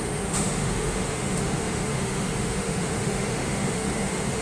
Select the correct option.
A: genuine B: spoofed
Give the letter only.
B